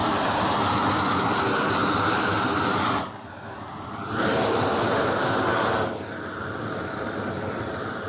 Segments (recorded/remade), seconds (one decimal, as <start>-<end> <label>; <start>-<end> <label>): 0.0-0.5 remade; 0.5-1.8 recorded; 1.8-5.7 remade; 5.7-8.1 recorded